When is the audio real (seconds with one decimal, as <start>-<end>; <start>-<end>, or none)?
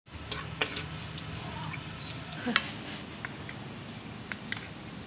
0.0-5.1